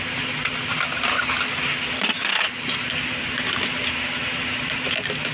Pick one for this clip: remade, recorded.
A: recorded